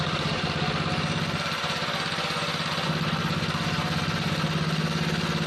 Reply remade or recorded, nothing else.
recorded